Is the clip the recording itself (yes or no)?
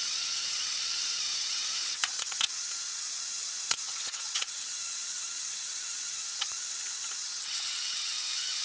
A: no